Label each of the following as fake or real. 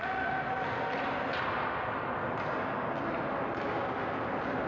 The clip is real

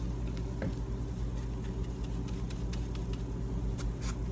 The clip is real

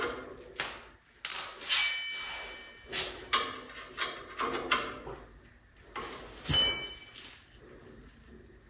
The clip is real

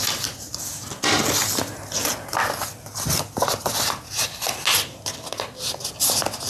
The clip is real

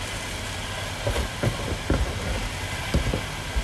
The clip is real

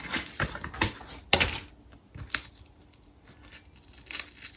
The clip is real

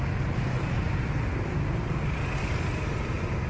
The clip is real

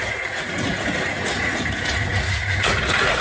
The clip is fake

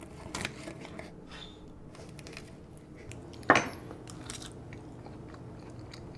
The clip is real